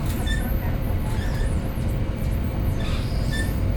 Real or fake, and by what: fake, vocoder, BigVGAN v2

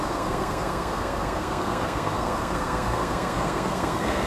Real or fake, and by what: fake, codec, SNAC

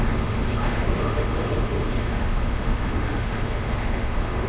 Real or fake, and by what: fake, autoencoder, DAC-VAE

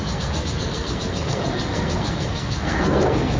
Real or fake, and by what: fake, codec, SNAC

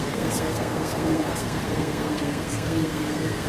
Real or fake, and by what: fake, codec, SNAC